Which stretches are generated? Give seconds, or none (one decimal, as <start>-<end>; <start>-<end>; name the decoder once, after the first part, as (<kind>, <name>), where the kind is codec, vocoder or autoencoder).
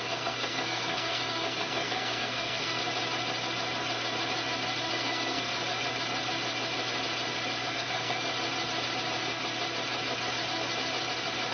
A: 0.0-2.8 (codec, SNAC); 4.9-5.5; 7.7-8.3